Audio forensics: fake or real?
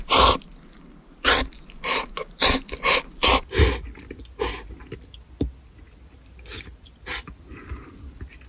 real